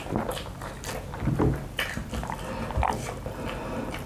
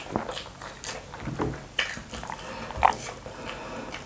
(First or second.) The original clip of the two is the second